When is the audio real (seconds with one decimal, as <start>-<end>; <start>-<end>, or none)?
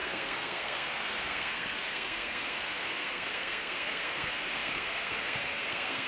none